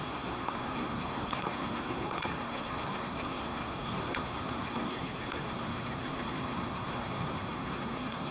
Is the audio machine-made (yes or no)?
yes